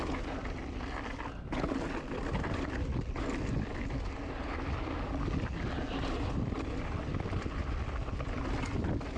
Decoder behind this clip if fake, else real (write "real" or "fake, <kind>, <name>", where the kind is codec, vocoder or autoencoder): real